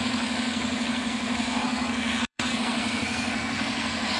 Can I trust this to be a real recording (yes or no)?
no